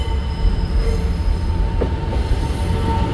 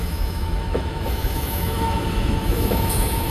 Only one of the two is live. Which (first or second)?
first